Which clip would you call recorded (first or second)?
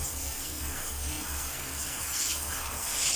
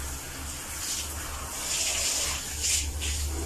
second